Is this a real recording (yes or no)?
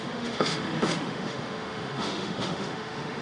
no